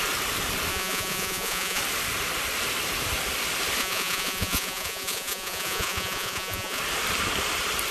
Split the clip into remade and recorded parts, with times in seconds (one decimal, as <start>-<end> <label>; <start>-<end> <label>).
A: 0.0-0.7 recorded; 0.7-1.8 remade; 1.8-3.8 recorded; 3.8-6.8 remade; 6.8-7.9 recorded